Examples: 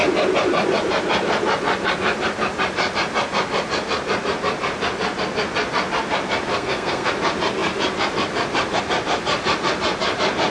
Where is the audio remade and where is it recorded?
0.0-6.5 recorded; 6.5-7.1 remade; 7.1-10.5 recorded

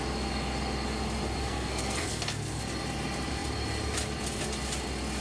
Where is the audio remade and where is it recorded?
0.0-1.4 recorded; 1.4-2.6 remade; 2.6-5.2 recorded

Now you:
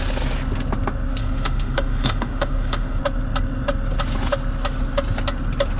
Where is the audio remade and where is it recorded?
0.0-1.2 recorded; 1.2-3.0 remade; 3.0-5.8 recorded

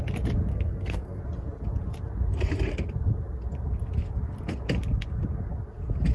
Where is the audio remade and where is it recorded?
0.0-0.5 recorded; 0.5-1.2 remade; 1.2-6.1 recorded

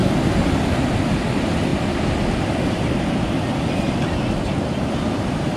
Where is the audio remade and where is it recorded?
0.0-5.6 recorded

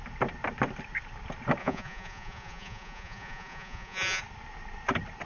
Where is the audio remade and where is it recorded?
0.0-1.6 recorded; 1.6-4.2 remade; 4.2-5.3 recorded